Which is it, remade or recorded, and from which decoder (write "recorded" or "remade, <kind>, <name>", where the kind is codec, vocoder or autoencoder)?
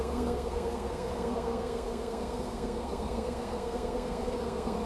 remade, codec, SNAC